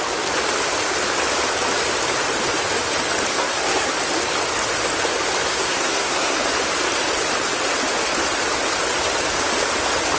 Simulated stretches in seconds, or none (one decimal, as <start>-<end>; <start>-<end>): 3.3-3.9; 5.4-6.4